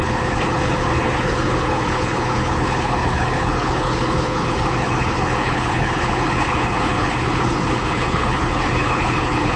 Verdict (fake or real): fake